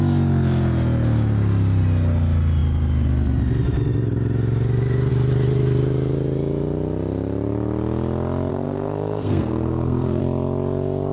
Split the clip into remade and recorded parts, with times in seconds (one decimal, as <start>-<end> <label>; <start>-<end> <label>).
0.0-8.5 recorded; 8.5-10.2 remade; 10.2-11.1 recorded

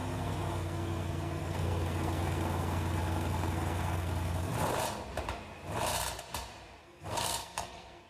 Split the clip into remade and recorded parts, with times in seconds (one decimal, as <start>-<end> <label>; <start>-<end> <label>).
0.0-4.5 remade; 4.5-6.8 recorded; 6.8-8.1 remade

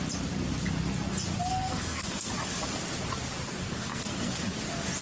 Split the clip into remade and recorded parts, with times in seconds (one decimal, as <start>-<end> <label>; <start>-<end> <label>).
0.0-1.5 recorded; 1.5-2.3 remade; 2.3-3.6 recorded; 3.6-4.3 remade; 4.3-5.0 recorded

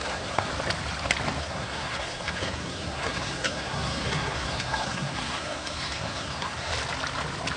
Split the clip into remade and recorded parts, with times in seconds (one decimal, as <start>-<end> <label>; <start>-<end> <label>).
0.0-0.5 remade; 0.5-1.4 recorded; 1.4-6.7 remade; 6.7-7.6 recorded